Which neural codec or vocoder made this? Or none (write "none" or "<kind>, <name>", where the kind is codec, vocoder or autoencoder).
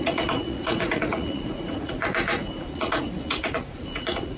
vocoder, Vocos